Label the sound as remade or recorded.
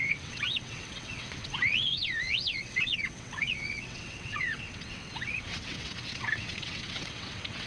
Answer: remade